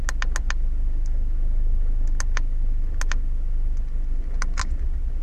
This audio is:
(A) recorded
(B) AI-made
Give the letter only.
A